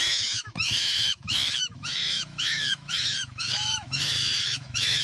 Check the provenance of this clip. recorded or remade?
remade